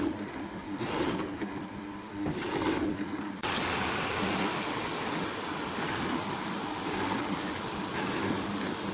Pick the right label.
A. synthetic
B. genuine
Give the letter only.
B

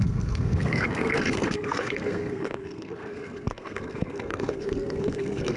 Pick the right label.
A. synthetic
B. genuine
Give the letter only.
A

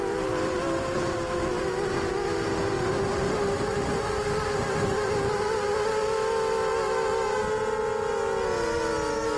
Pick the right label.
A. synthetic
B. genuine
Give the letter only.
B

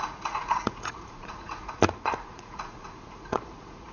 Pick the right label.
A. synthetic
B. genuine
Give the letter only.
A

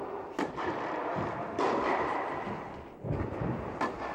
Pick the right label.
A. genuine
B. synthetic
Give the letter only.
A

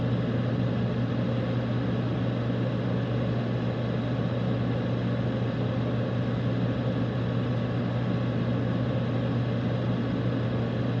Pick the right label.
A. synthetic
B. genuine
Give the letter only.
B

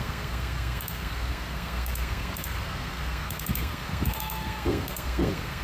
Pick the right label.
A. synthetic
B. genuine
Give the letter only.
A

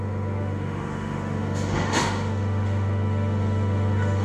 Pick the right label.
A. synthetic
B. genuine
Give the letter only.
A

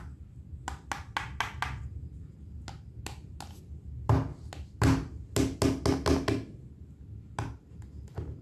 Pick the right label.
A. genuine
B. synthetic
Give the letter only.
A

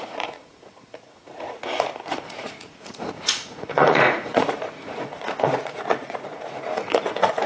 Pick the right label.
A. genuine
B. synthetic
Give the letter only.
B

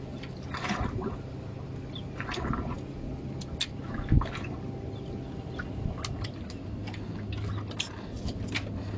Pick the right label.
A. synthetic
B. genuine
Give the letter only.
B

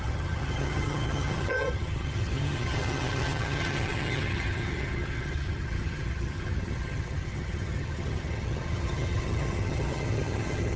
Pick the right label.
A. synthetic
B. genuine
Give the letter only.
A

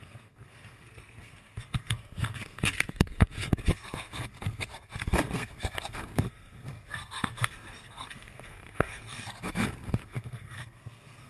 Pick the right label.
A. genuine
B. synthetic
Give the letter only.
B